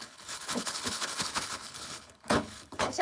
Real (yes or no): no